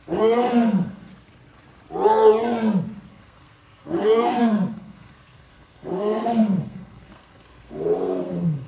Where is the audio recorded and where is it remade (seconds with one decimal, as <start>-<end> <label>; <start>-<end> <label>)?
0.0-1.1 remade; 1.1-3.1 recorded; 3.1-8.7 remade